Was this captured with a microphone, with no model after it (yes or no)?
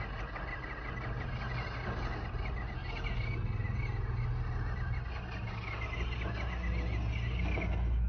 yes